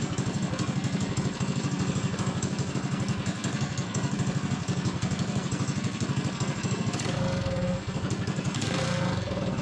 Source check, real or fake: fake